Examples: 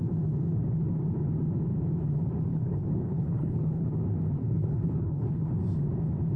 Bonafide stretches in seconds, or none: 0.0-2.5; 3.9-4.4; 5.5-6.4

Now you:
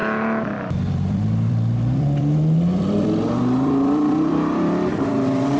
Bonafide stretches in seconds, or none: none

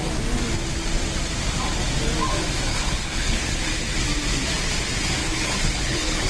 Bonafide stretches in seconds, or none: 0.0-2.7; 3.6-5.2

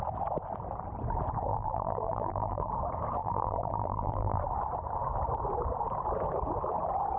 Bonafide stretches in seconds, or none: 0.0-1.5; 2.7-3.2; 4.4-7.2

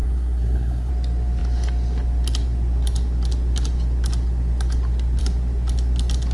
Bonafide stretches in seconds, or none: 0.9-6.3